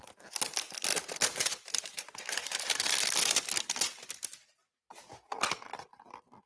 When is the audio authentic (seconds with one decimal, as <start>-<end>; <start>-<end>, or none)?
0.0-0.9; 2.8-6.5